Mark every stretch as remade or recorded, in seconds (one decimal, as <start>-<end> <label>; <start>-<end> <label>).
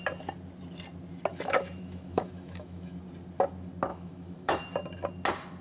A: 0.0-1.3 recorded; 1.3-3.0 remade; 3.0-3.9 recorded; 3.9-4.6 remade; 4.6-5.6 recorded